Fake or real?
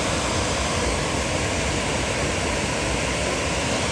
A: real